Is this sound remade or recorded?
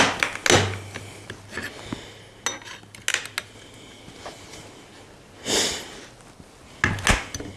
recorded